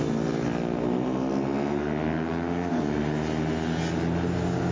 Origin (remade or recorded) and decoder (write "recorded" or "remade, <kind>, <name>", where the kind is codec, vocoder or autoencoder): recorded